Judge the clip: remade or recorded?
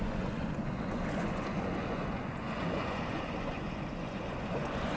remade